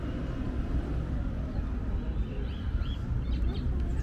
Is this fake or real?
real